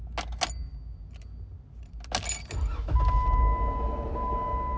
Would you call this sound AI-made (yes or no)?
no